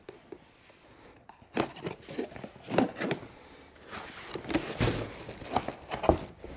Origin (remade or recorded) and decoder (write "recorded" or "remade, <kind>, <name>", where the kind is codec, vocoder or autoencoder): recorded